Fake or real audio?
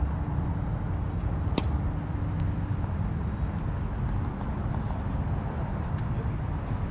real